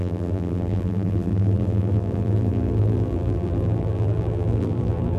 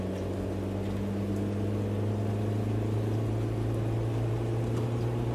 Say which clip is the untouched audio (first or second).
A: second